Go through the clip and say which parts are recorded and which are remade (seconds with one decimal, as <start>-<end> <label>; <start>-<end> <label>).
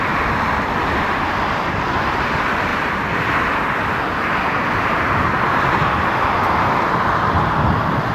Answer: 0.0-2.7 remade; 2.7-7.3 recorded; 7.3-8.1 remade